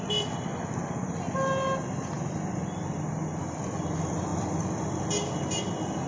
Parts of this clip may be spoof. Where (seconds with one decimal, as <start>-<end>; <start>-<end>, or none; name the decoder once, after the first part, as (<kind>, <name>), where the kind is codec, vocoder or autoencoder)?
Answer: none